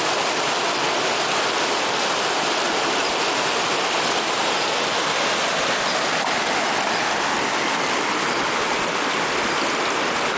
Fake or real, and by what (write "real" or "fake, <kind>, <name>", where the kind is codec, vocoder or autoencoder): real